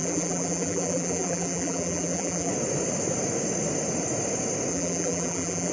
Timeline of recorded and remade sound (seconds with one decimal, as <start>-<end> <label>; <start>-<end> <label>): 0.0-2.5 remade; 2.5-4.7 recorded; 4.7-5.7 remade